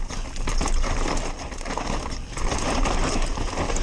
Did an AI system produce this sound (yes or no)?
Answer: no